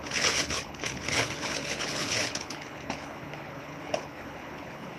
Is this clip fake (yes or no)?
yes